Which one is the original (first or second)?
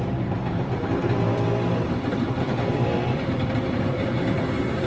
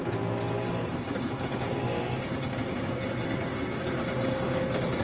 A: second